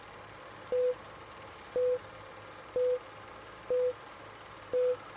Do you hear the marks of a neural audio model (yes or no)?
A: no